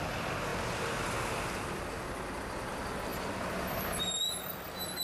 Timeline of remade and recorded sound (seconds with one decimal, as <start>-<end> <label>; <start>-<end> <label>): 0.0-5.0 recorded